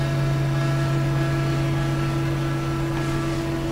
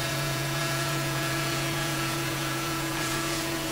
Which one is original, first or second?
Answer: first